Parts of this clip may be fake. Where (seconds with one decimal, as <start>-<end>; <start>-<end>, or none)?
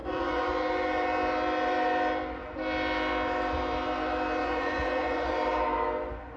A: 0.0-0.5; 4.4-5.3